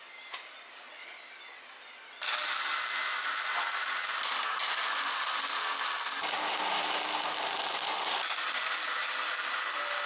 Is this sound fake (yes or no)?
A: no